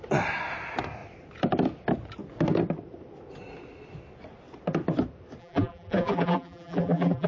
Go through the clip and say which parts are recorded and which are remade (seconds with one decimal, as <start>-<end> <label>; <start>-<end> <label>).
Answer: 0.0-5.4 recorded; 5.4-7.3 remade